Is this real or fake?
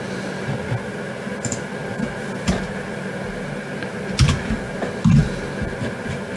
real